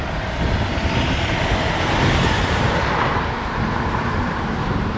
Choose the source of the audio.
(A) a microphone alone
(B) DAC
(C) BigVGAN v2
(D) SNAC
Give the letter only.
C